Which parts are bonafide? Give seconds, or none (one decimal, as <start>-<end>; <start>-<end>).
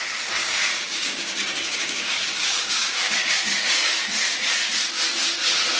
0.0-0.4; 3.9-5.8